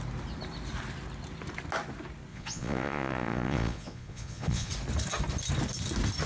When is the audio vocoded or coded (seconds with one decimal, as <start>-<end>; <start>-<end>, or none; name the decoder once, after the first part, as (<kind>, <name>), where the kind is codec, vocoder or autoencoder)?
2.3-4.7 (vocoder, Vocos)